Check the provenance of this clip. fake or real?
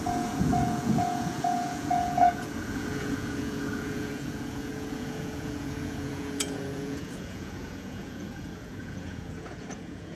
fake